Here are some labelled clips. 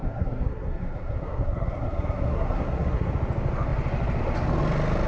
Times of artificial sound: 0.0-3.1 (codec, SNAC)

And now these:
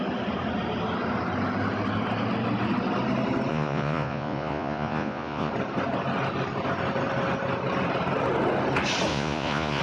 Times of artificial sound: 3.5-5.5 (vocoder, Vocos); 9.1-9.8

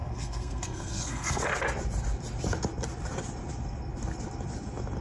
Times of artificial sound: 0.0-1.4 (codec, SNAC)

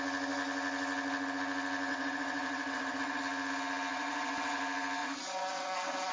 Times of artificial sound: 1.9-3.2 (vocoder, WaveNeXt); 3.9-4.6; 5.0-6.1

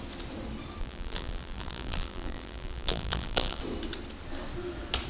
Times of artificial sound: 0.8-3.6 (vocoder, BigVGAN v2)

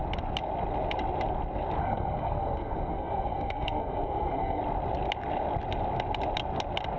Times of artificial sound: 1.8-4.6 (codec, SNAC)

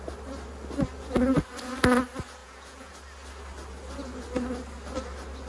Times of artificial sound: 2.4-2.9 (vocoder, Vocos)

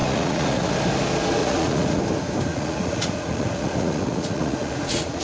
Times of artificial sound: 0.0-0.7 (vocoder, Vocos); 1.4-2.0; 2.5-5.2